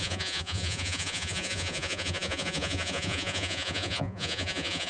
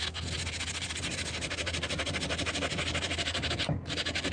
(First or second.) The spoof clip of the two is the first